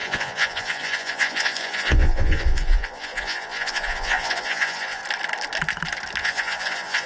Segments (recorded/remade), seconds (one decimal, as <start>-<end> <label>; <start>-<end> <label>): 0.0-5.0 remade; 5.0-6.2 recorded; 6.2-7.1 remade